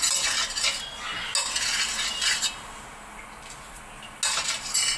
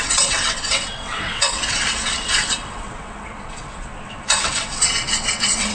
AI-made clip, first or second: second